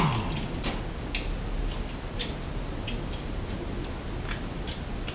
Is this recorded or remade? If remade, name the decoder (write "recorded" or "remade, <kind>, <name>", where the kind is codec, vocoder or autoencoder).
recorded